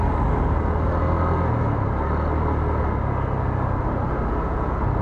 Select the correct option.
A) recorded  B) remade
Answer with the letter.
A